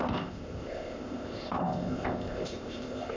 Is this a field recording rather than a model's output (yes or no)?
no